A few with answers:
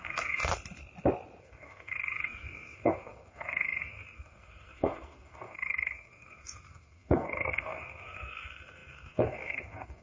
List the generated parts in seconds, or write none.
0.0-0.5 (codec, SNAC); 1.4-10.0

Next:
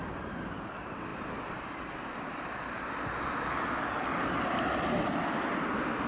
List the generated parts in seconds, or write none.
none

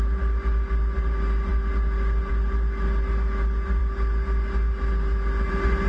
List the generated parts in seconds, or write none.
none

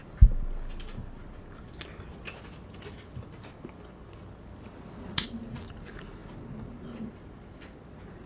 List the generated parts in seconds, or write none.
none